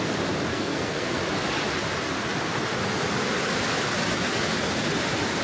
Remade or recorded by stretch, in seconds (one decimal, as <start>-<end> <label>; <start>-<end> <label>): 0.0-0.5 recorded; 0.5-1.2 remade; 1.2-5.4 recorded